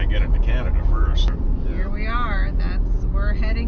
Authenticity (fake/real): real